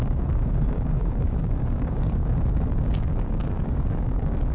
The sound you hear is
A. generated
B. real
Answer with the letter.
A